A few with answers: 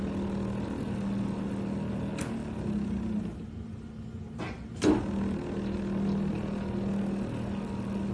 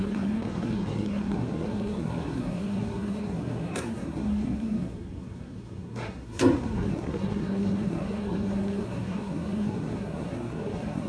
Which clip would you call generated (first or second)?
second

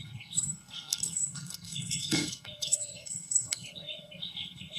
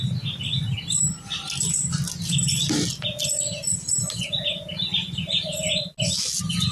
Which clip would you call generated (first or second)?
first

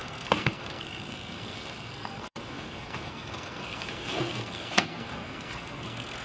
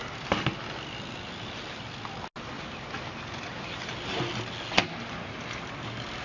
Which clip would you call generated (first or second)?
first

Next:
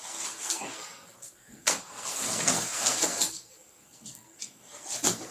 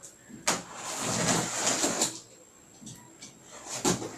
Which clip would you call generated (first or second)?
first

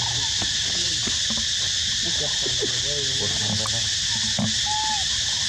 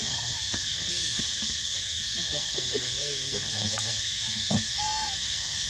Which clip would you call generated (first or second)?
second